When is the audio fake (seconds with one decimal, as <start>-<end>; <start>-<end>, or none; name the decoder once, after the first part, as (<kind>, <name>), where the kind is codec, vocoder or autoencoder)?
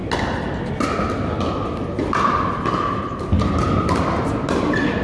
none